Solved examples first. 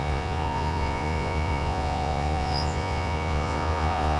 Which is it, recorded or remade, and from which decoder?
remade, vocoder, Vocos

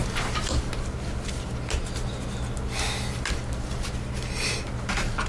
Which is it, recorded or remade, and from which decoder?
recorded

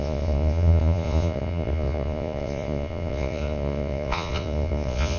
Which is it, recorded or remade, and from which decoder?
remade, vocoder, Vocos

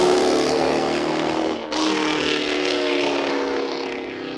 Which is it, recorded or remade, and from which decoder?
remade, codec, SNAC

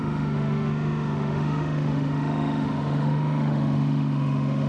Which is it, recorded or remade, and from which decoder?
remade, autoencoder, DAC-VAE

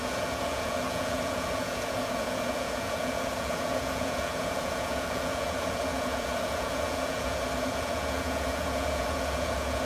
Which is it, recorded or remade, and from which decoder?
remade, vocoder, Vocos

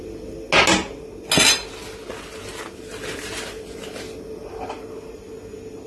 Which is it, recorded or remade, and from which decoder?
recorded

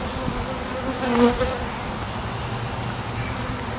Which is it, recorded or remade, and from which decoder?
recorded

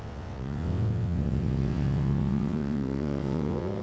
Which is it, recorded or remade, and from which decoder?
remade, vocoder, WaveNeXt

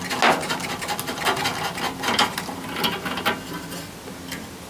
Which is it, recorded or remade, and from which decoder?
recorded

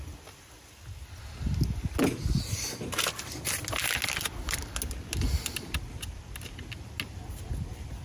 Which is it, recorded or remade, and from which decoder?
recorded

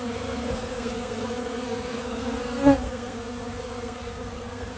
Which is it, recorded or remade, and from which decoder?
remade, codec, SNAC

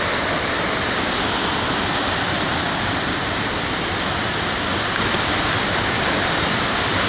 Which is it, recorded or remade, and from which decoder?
remade, vocoder, BigVGAN v2